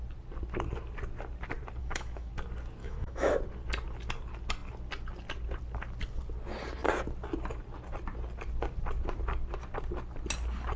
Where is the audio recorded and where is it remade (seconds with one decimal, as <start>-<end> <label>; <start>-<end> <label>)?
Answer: 0.0-1.8 recorded; 1.8-2.3 remade; 2.3-2.8 recorded; 2.8-3.4 remade; 3.4-10.8 recorded